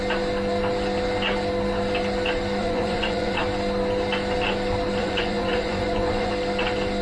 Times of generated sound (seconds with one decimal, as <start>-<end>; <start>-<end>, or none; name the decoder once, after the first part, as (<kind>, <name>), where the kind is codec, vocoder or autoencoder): 2.6-3.4 (vocoder, Vocos); 5.0-6.3